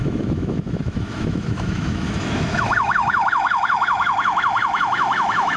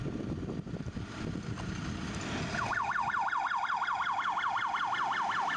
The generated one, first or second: first